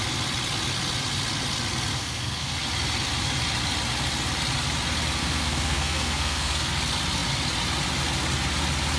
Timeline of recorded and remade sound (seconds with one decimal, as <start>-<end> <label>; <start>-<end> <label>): 0.0-1.9 recorded; 1.9-2.5 remade; 2.5-5.2 recorded; 5.2-6.7 remade; 6.7-9.0 recorded